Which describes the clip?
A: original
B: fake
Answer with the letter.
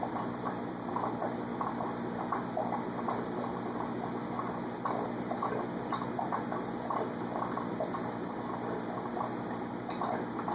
A